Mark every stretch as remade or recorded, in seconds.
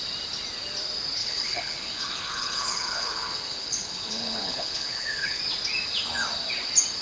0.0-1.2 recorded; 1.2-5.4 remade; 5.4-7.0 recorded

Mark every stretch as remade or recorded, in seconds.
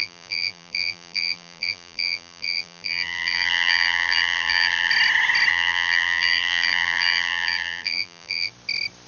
0.0-4.9 remade; 4.9-5.5 recorded; 5.5-8.5 remade; 8.5-9.1 recorded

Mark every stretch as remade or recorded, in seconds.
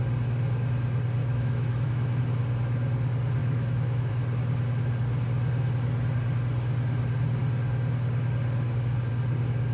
0.0-1.2 recorded; 1.2-2.2 remade; 2.2-3.4 recorded; 3.4-4.1 remade; 4.1-9.7 recorded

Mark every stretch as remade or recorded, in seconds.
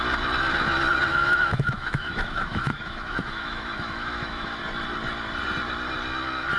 0.0-1.1 recorded; 1.1-4.6 remade; 4.6-6.6 recorded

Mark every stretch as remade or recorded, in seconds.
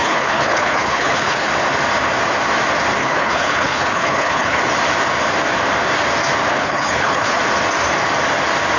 0.0-1.5 remade; 1.5-3.0 recorded; 3.0-4.6 remade; 4.6-6.5 recorded; 6.5-7.4 remade; 7.4-8.8 recorded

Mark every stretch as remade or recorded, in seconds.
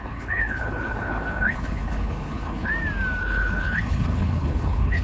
0.0-2.7 remade; 2.7-3.2 recorded; 3.2-5.0 remade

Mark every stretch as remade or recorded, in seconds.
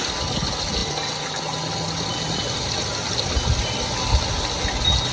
0.0-5.1 recorded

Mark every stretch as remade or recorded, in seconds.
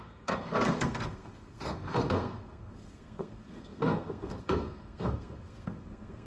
0.0-6.3 remade